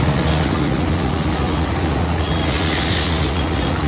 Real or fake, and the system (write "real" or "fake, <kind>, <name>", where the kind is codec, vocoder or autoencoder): fake, vocoder, Vocos